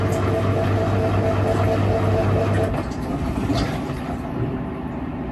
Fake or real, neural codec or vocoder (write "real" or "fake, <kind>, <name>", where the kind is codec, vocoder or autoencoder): real